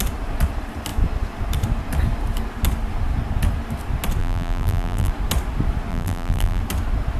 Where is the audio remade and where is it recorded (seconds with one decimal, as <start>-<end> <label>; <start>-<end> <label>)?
0.0-4.2 recorded; 4.2-5.1 remade; 5.1-5.9 recorded; 5.9-6.6 remade; 6.6-7.2 recorded